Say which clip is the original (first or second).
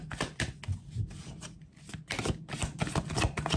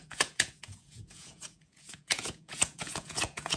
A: first